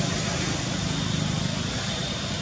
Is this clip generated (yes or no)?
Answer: no